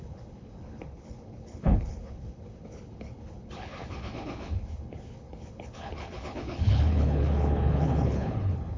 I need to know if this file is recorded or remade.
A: remade